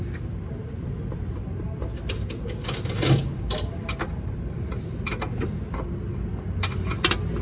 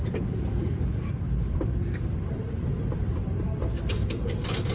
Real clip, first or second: first